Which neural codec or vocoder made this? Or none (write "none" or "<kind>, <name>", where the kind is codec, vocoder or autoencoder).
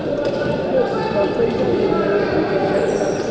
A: none